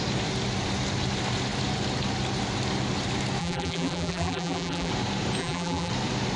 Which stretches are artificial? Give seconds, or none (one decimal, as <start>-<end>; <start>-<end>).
3.4-4.9; 5.4-5.9